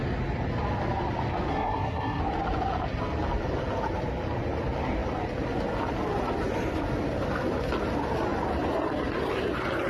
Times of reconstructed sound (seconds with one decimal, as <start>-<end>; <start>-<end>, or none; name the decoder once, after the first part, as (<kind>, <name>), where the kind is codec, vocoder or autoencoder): 1.5-2.2 (codec, SNAC)

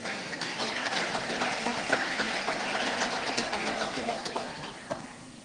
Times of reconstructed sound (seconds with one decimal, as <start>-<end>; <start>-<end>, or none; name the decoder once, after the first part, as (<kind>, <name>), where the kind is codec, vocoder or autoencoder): 0.0-1.0 (codec, SNAC); 1.6-2.3; 3.3-5.4

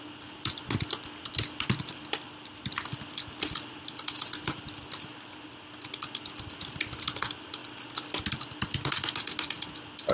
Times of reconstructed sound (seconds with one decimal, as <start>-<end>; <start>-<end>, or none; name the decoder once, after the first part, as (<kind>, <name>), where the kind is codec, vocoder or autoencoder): none

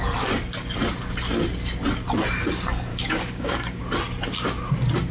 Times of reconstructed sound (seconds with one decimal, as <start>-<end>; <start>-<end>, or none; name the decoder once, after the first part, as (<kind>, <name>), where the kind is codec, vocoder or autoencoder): 2.9-3.8 (codec, DAC)